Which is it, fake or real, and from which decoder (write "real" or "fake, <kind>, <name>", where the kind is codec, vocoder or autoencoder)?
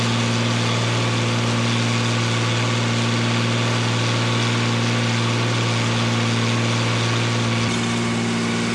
real